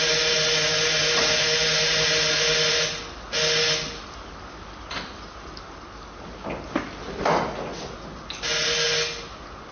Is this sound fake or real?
real